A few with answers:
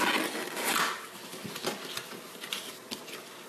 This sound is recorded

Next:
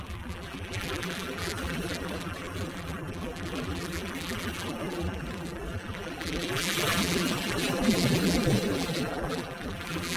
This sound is remade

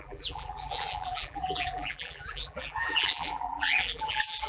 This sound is remade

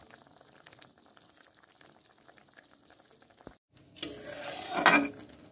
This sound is recorded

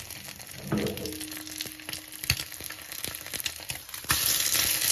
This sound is recorded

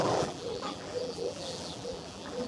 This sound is remade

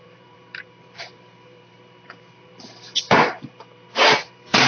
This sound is remade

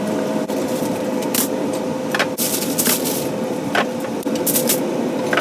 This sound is remade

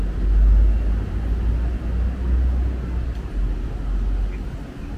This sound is recorded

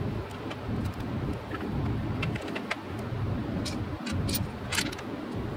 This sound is recorded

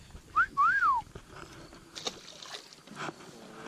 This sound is recorded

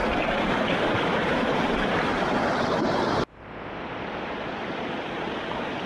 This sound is remade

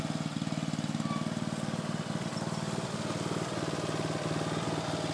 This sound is recorded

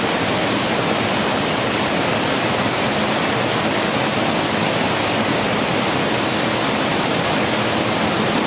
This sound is remade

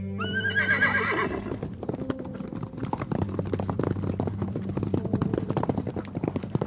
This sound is remade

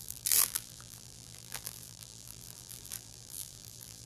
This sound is remade